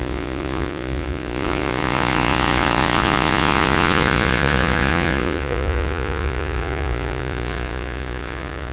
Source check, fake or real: fake